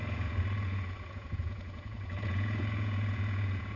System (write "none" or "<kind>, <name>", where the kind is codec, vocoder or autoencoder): vocoder, Vocos